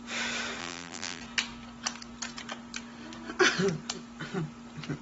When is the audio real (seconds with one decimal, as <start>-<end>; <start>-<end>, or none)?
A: 0.0-0.6; 1.2-5.0